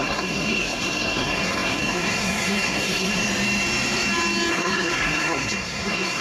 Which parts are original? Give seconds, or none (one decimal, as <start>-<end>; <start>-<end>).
3.2-4.5